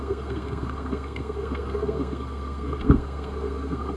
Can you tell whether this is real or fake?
fake